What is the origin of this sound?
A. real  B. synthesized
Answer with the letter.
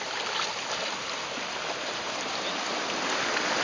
A